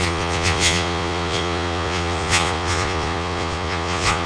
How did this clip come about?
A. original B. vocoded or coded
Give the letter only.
B